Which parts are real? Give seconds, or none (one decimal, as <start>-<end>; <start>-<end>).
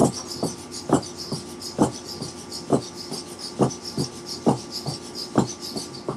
0.0-6.2